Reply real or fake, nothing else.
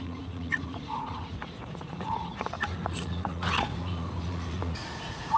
fake